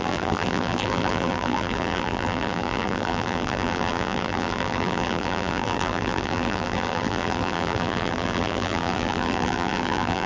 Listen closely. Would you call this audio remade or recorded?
remade